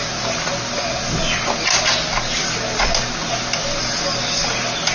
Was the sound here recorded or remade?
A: recorded